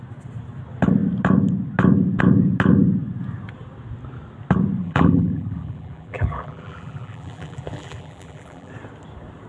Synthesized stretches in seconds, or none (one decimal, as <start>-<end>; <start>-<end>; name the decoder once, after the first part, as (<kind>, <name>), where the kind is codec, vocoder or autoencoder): 4.8-8.7 (vocoder, BigVGAN v2)